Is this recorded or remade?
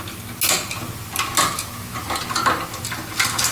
recorded